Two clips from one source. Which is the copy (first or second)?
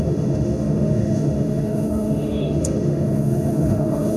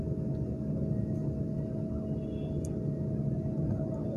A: first